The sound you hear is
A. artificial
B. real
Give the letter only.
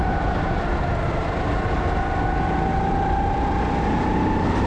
B